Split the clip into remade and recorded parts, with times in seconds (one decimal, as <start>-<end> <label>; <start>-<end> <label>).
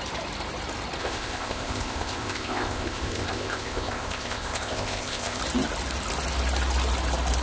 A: 0.0-1.0 recorded; 1.0-5.4 remade; 5.4-7.4 recorded